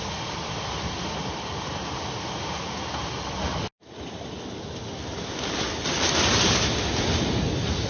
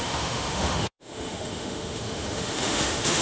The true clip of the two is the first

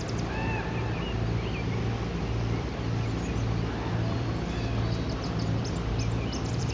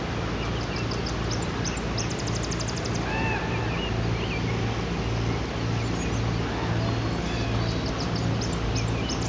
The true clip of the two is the second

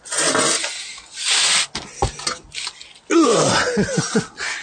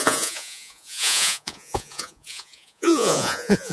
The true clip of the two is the first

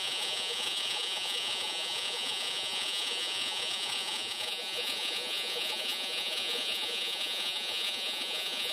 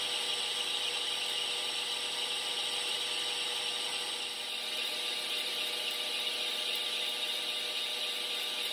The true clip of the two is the second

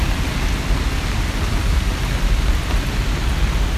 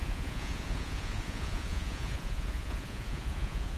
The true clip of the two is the first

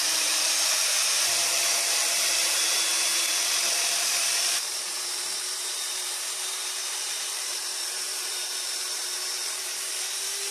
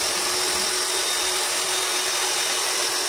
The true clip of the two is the second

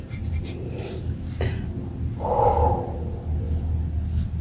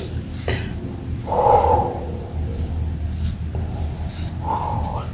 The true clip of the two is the first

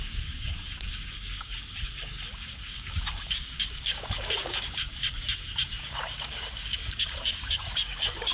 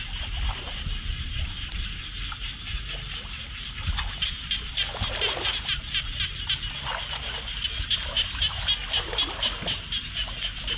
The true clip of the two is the second